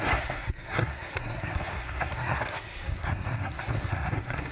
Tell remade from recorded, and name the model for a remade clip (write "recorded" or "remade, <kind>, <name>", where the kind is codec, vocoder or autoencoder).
remade, codec, SNAC